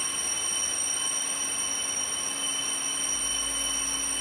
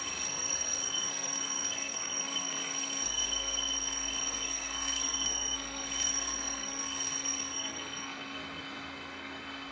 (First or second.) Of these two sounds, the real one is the first